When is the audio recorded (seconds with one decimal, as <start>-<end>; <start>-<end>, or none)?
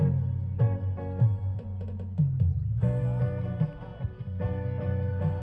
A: 0.0-5.4